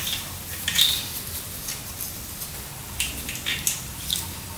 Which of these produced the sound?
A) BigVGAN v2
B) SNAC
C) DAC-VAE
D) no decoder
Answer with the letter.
D